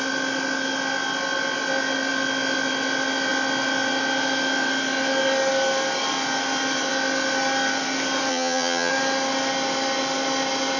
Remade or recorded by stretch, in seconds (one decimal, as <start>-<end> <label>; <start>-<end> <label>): 0.0-8.3 recorded; 8.3-8.9 remade; 8.9-10.8 recorded